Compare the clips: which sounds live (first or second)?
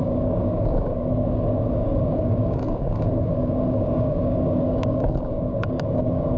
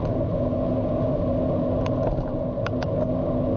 second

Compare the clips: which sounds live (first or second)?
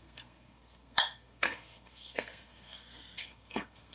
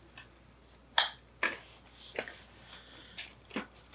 second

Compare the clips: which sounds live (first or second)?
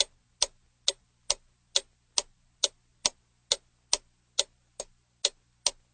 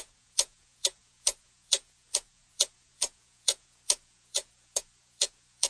first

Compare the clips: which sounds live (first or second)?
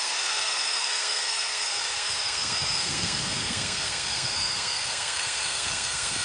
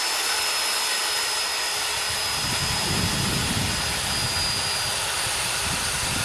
second